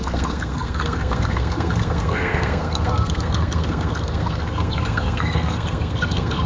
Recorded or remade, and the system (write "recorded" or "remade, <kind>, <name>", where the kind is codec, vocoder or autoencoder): remade, codec, SNAC